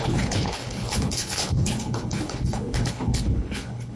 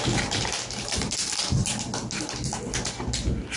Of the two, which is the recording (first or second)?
second